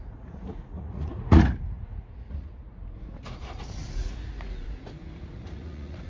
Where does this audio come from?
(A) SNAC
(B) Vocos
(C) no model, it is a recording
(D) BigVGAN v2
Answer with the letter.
B